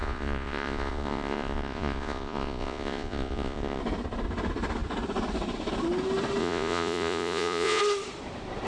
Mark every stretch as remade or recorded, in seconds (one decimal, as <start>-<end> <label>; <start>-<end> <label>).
0.0-3.8 remade; 3.8-6.4 recorded; 6.4-7.8 remade; 7.8-8.7 recorded